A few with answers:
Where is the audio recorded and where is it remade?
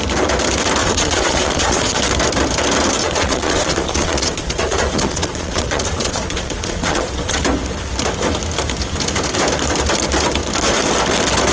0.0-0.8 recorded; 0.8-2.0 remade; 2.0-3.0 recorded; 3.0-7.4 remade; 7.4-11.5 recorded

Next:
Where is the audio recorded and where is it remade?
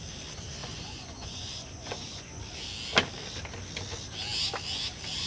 0.0-0.6 recorded; 0.6-2.4 remade; 2.4-5.3 recorded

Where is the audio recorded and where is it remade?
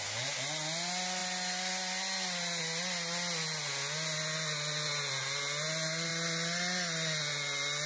0.0-7.9 recorded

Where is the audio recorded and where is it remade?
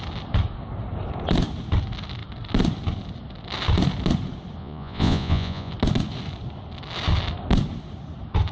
0.0-4.6 recorded; 4.6-5.7 remade; 5.7-8.5 recorded